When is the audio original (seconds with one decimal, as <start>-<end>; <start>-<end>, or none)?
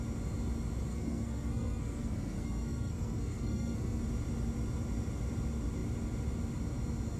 0.0-0.9; 4.0-7.2